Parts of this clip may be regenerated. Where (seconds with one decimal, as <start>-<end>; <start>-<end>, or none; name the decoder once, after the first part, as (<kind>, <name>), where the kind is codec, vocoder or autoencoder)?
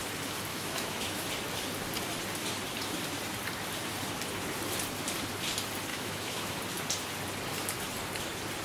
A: 0.5-1.3 (autoencoder, DAC-VAE); 5.9-6.5